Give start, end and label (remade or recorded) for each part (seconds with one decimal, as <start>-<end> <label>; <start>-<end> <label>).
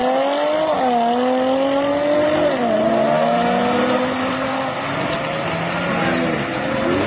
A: 0.0-7.1 recorded